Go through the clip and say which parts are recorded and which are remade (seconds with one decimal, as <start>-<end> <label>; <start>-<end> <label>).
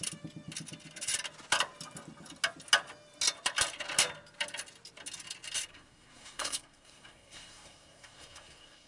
0.0-5.7 recorded; 5.7-8.9 remade